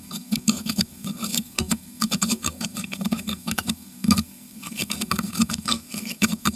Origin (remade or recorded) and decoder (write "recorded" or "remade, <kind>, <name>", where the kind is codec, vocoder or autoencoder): remade, codec, SNAC